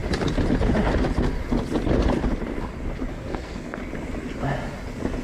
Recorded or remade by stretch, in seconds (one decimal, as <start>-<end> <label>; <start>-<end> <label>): 0.0-3.1 recorded; 3.1-3.8 remade; 3.8-5.2 recorded